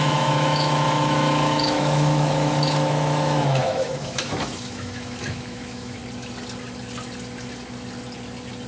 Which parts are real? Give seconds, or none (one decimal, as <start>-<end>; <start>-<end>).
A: 6.0-8.7